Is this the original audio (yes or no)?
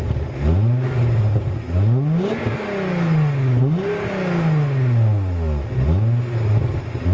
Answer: yes